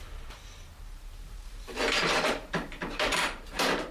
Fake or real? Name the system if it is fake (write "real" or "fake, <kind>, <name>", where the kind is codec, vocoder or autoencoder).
fake, vocoder, BigVGAN v2